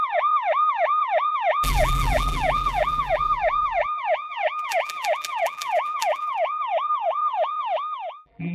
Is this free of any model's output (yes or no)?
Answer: no